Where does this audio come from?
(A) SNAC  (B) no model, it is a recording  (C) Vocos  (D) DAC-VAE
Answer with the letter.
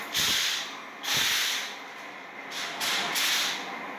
B